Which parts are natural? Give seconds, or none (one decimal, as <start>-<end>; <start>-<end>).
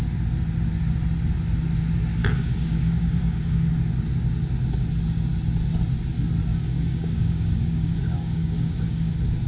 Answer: 0.0-2.2; 3.7-6.5; 9.1-9.5